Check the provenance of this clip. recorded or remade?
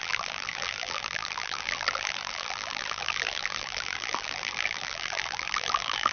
remade